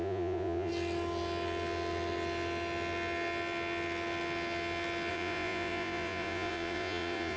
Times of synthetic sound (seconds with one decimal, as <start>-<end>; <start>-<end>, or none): 0.0-0.7; 5.1-7.4